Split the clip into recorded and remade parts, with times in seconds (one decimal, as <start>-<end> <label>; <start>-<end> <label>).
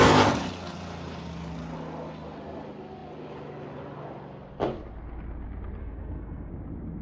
0.0-5.8 recorded; 5.8-6.5 remade; 6.5-7.0 recorded